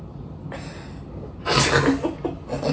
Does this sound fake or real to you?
real